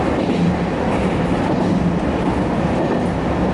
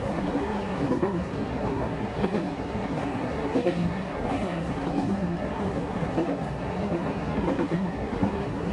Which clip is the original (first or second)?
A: first